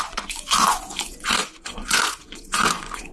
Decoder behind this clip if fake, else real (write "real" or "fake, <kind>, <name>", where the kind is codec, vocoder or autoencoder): fake, vocoder, Vocos